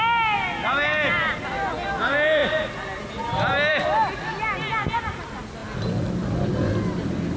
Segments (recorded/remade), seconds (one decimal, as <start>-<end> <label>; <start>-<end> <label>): 0.0-7.4 recorded